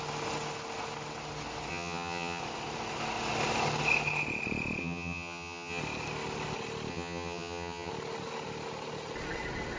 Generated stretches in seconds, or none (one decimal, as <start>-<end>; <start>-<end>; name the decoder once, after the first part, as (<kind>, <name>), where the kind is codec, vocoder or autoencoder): 1.7-2.4 (vocoder, HiFi-GAN); 4.8-5.8; 6.9-7.9